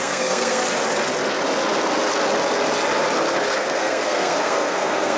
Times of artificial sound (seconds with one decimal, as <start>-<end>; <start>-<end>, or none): 0.0-0.6; 3.5-5.2